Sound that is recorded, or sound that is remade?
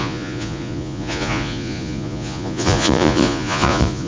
remade